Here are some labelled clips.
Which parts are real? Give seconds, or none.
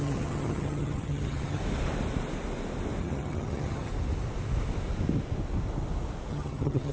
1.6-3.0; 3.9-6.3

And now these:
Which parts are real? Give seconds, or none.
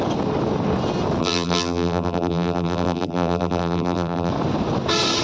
0.0-1.2; 4.3-5.2